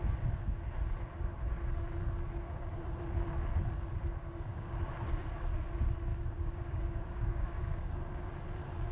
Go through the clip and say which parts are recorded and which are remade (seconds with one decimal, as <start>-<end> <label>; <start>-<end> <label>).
0.0-4.2 recorded; 4.2-4.9 remade; 4.9-6.1 recorded; 6.1-7.9 remade; 7.9-8.9 recorded